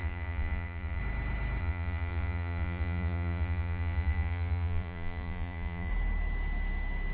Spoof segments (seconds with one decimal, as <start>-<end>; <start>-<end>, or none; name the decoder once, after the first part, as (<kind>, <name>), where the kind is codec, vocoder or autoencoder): 0.0-1.0 (vocoder, Vocos); 1.6-5.9